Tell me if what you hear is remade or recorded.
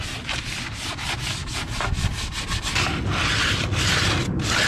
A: recorded